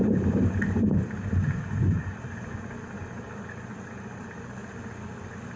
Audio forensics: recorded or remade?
recorded